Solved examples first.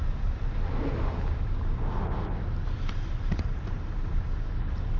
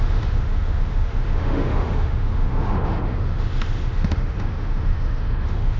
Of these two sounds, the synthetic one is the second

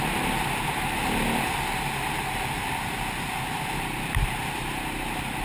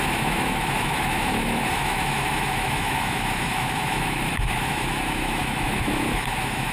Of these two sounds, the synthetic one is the second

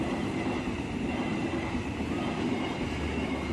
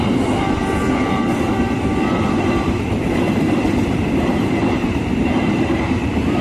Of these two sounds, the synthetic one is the second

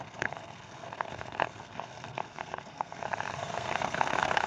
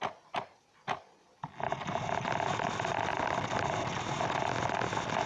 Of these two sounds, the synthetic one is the first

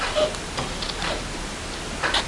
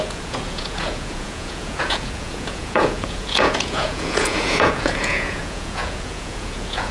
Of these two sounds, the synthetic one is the second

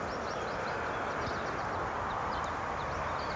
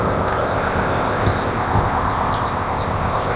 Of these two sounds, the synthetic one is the second